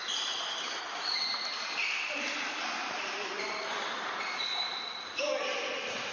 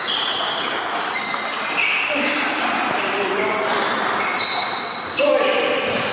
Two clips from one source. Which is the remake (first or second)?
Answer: first